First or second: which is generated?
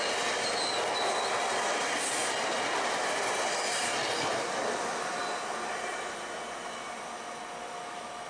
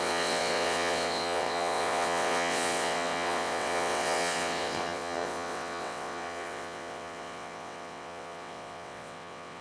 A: second